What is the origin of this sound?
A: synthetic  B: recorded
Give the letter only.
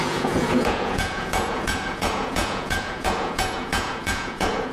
A